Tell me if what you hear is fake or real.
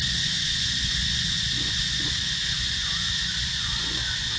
fake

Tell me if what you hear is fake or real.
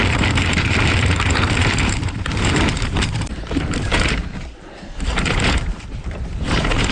fake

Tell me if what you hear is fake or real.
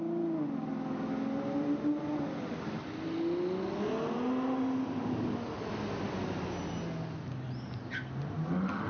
real